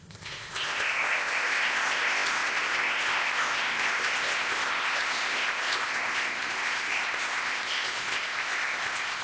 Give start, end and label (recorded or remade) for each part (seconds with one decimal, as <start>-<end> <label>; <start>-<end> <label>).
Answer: 0.0-9.2 remade